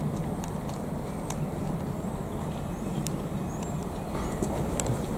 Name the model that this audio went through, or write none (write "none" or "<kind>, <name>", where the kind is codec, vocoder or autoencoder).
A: vocoder, BigVGAN v2